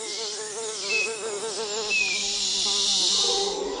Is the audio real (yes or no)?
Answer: yes